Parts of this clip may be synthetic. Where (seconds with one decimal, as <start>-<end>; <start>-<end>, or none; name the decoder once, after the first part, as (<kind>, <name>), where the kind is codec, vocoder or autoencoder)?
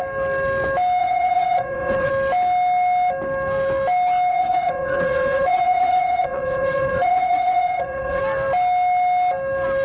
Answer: 1.0-2.1 (vocoder, WaveNeXt); 4.3-8.2